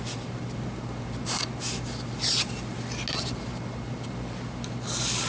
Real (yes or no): yes